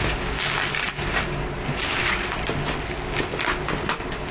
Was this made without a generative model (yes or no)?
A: yes